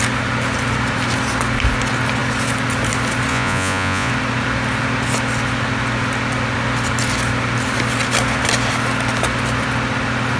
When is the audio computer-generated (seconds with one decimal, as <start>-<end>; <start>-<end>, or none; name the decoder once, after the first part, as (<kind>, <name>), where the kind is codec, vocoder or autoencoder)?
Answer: 3.3-4.1 (vocoder, Vocos)